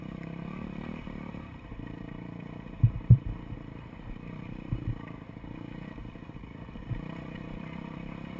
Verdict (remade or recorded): remade